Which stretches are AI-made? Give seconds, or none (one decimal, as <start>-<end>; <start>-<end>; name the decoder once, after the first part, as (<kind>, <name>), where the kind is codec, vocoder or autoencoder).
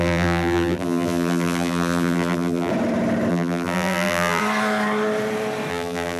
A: 0.0-2.7 (vocoder, BigVGAN v2); 3.3-4.4; 5.7-6.2